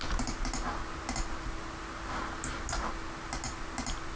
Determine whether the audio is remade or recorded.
recorded